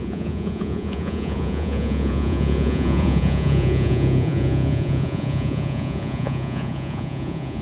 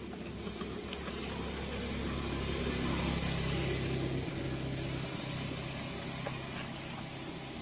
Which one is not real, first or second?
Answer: first